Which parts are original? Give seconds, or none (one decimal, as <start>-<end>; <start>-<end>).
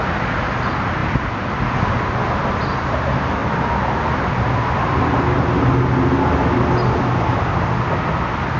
0.0-8.6